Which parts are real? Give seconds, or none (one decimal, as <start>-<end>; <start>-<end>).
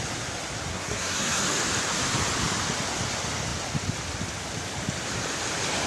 0.0-0.7; 1.4-5.9